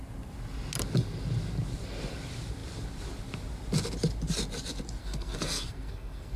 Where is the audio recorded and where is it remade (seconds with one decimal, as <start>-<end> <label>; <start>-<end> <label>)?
0.0-5.0 recorded; 5.0-6.4 remade